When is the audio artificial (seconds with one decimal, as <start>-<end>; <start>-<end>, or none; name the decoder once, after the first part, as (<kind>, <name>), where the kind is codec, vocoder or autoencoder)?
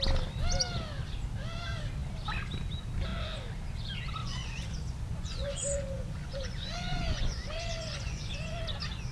4.2-8.6 (vocoder, Vocos)